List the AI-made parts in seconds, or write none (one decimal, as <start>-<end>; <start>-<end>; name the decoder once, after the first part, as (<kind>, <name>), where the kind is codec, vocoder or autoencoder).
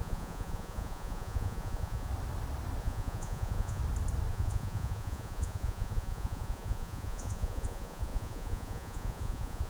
0.0-2.1 (vocoder, Vocos); 2.8-3.8; 4.3-9.7